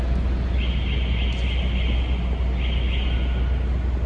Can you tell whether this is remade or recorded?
recorded